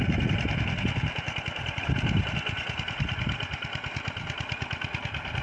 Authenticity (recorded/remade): recorded